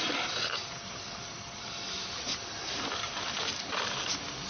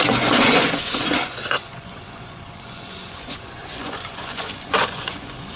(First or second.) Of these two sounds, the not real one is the second